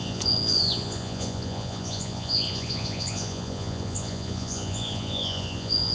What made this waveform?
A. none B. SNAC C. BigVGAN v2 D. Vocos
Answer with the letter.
D